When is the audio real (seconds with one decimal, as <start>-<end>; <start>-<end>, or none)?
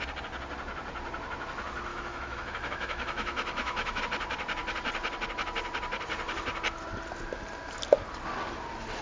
0.0-1.9; 4.0-9.0